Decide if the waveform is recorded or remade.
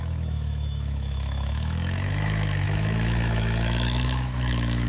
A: remade